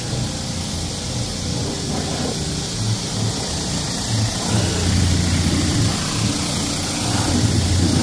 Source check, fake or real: real